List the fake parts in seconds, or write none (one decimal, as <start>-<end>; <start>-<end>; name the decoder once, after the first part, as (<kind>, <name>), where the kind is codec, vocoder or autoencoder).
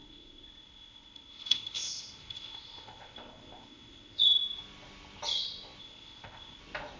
0.0-4.2 (codec, ZipCodec); 5.8-6.6